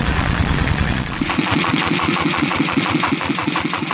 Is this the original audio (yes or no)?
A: no